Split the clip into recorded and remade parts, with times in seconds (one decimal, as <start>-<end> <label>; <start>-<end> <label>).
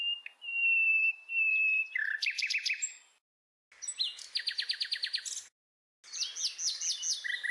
0.0-0.5 recorded; 0.5-2.5 remade; 2.5-7.5 recorded